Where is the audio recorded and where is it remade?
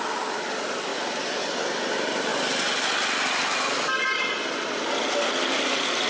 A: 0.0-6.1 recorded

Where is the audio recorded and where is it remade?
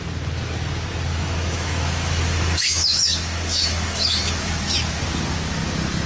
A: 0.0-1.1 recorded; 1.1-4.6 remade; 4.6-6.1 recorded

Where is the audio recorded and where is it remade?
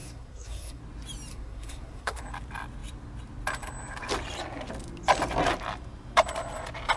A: 0.0-0.8 remade; 0.8-1.3 recorded; 1.3-2.2 remade; 2.2-7.0 recorded